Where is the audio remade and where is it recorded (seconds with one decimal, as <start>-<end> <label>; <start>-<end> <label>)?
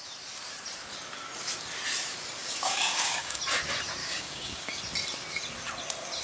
0.0-2.4 recorded; 2.4-3.4 remade; 3.4-4.0 recorded; 4.0-4.8 remade; 4.8-6.2 recorded